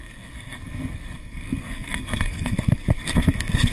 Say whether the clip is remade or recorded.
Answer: remade